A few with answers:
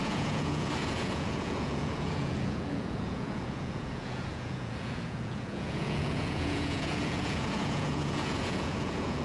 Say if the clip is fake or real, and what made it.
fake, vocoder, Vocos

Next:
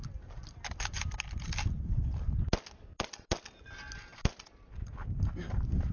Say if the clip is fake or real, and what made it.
real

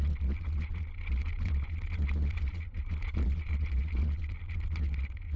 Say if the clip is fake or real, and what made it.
fake, vocoder, Vocos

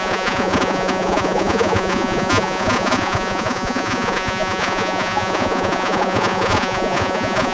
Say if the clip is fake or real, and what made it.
fake, vocoder, Vocos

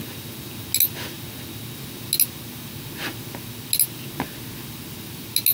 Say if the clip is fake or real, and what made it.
real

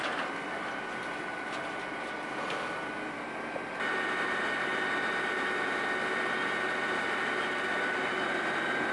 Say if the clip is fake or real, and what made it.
real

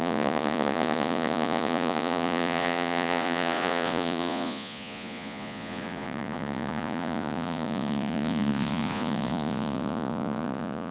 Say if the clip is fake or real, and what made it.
fake, vocoder, Vocos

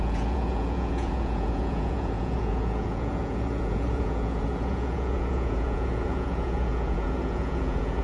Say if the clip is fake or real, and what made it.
fake, vocoder, Vocos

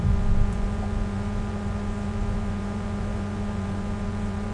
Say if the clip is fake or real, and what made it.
fake, vocoder, Vocos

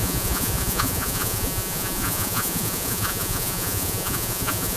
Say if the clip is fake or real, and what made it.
fake, vocoder, Vocos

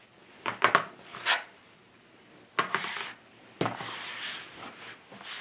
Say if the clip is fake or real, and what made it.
real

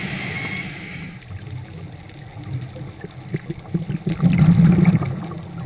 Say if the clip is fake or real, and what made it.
real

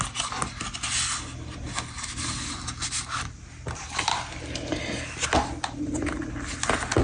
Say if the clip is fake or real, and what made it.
real